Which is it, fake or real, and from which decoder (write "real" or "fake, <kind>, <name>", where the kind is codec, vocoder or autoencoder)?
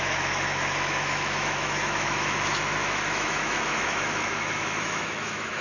fake, autoencoder, DAC-VAE